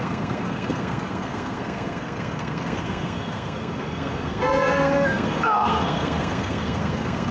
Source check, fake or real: fake